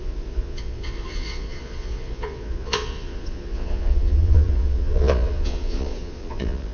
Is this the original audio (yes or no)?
no